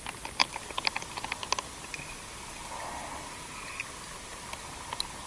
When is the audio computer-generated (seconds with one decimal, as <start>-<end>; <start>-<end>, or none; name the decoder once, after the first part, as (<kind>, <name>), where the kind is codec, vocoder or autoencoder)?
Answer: none